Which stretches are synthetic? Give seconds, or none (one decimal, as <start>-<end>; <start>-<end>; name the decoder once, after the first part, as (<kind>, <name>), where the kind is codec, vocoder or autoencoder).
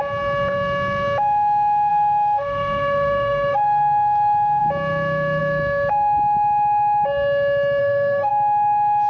1.9-4.6 (codec, SNAC); 7.8-8.3